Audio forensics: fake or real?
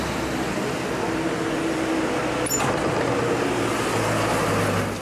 real